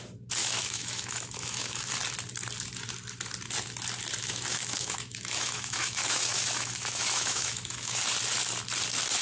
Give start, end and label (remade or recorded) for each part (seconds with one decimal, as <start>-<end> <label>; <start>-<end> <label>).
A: 0.0-0.4 recorded; 0.4-1.9 remade; 1.9-4.2 recorded; 4.2-8.0 remade; 8.0-9.2 recorded